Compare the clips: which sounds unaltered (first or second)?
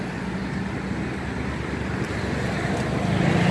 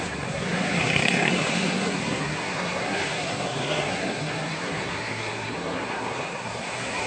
first